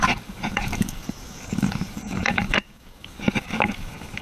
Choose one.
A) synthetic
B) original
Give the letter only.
A